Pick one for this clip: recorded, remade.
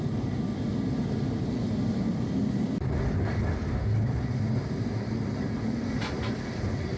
recorded